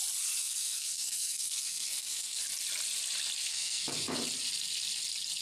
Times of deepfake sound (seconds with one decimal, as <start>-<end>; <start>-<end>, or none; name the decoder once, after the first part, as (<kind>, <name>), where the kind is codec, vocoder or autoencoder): 0.4-2.4 (codec, SNAC); 3.5-4.1